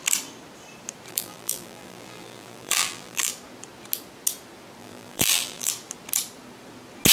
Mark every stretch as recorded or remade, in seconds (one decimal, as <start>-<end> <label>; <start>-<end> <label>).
0.0-1.1 recorded; 1.1-3.3 remade; 3.3-4.8 recorded; 4.8-5.7 remade; 5.7-7.1 recorded